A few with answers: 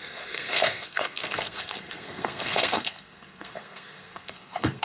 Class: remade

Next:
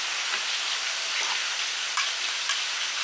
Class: recorded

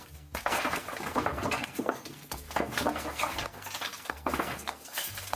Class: remade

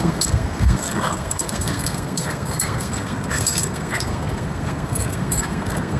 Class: remade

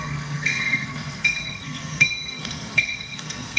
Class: remade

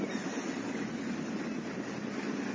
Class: recorded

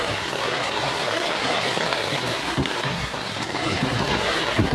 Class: remade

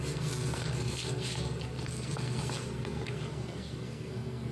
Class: remade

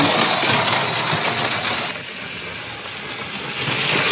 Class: recorded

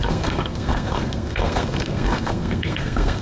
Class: remade